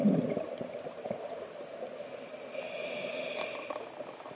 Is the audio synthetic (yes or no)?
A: no